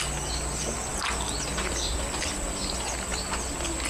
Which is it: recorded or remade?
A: recorded